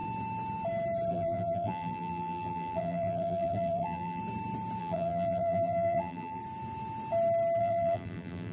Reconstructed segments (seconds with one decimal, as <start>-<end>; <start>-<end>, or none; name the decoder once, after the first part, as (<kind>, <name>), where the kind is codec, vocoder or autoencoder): 1.1-4.2 (vocoder, BigVGAN v2); 4.8-6.4; 7.6-8.5